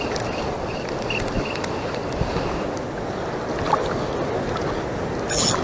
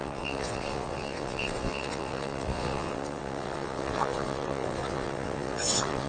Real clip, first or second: first